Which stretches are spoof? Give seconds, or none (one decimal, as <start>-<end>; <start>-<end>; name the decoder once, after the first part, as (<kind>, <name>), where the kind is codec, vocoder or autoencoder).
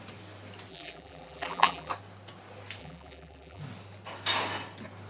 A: 0.7-1.9 (vocoder, BigVGAN v2); 2.8-3.6